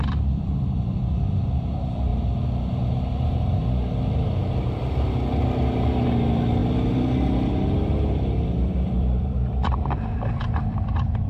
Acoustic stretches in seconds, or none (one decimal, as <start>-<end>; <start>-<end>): 2.1-4.6